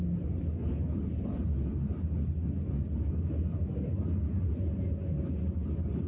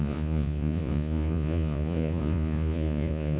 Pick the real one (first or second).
first